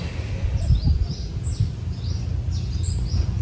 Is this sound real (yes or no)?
yes